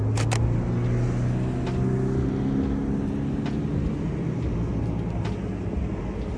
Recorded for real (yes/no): yes